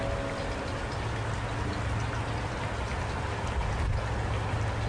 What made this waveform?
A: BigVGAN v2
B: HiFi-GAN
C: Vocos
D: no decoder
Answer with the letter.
D